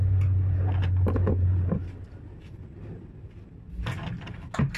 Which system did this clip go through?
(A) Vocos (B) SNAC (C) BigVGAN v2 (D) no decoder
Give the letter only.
D